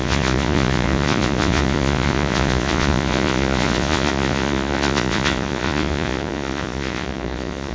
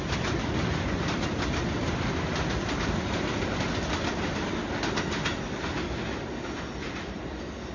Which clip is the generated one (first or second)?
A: first